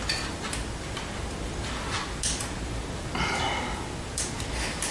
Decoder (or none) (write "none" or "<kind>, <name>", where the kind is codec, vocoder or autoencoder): none